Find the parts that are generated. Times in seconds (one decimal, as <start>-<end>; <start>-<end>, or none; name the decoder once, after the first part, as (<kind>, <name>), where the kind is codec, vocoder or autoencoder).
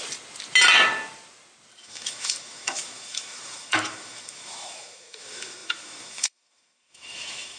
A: 1.8-7.6 (autoencoder, DAC-VAE)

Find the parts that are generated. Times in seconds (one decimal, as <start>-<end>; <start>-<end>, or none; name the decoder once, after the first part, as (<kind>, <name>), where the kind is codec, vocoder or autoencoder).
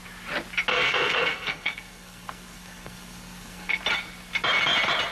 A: 0.7-3.8 (codec, SNAC)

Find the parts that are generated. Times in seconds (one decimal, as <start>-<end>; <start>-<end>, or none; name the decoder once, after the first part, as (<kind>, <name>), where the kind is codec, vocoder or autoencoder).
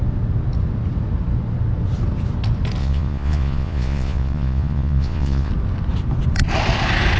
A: 2.8-5.5 (vocoder, Vocos)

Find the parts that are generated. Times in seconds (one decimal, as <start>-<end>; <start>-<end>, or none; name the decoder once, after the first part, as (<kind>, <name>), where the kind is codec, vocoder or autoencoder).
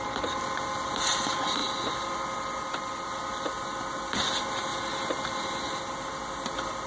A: none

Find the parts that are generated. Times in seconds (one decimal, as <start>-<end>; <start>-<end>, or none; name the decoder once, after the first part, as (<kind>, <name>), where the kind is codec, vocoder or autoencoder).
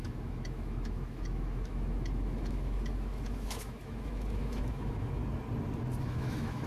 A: 0.0-5.2 (autoencoder, DAC-VAE); 6.0-6.7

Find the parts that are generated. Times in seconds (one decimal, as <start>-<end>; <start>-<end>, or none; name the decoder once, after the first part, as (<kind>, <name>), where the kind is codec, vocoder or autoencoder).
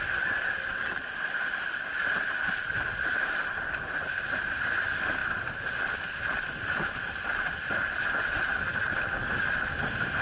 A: none